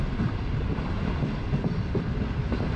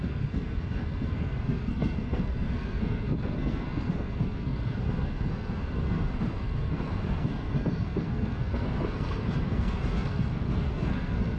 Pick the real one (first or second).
first